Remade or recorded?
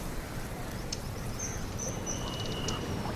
remade